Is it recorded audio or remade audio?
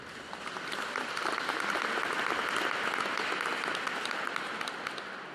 recorded